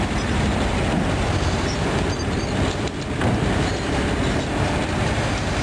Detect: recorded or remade remade